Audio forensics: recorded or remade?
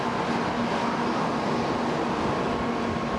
recorded